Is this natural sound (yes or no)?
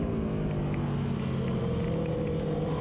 yes